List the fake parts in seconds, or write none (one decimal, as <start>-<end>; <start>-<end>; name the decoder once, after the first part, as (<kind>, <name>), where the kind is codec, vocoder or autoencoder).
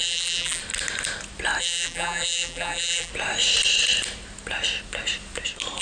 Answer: 0.0-0.6 (vocoder, BigVGAN v2); 1.6-3.1